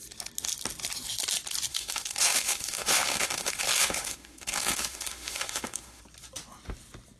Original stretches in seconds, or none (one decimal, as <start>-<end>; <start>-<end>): 0.0-1.7; 6.0-7.2